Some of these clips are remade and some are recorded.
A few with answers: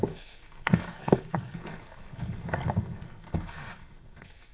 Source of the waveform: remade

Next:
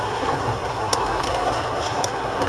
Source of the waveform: remade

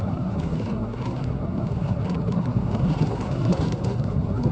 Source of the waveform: remade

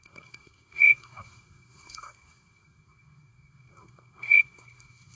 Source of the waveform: remade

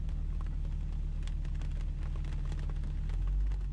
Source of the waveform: recorded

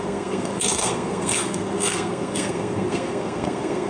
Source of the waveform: remade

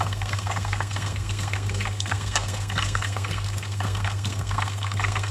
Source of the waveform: remade